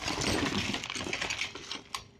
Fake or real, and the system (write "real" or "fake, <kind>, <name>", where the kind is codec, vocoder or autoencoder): real